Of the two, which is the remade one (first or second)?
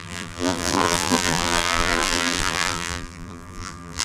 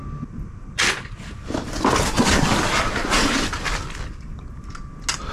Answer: first